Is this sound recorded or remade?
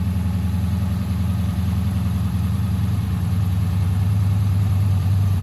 remade